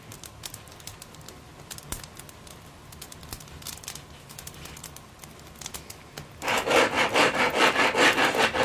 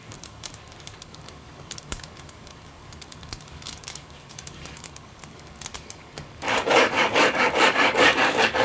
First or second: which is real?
first